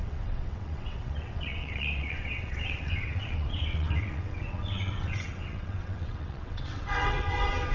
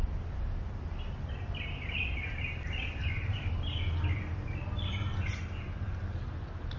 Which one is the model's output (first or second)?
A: first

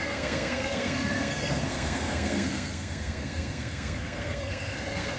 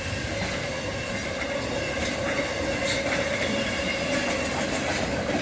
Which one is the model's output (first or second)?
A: first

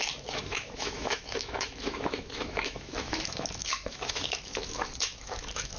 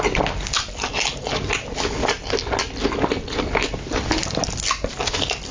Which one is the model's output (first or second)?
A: first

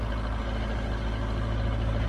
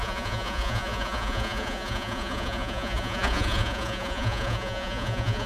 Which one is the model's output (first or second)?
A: second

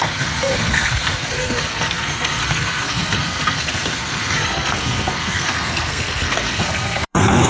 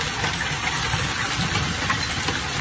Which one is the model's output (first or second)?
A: first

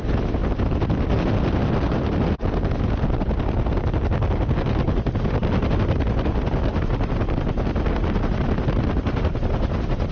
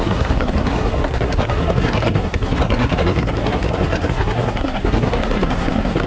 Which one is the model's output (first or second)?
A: second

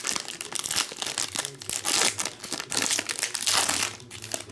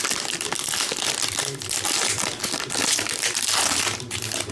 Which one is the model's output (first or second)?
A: second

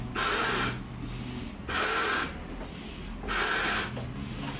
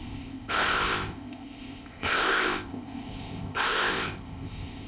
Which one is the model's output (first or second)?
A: second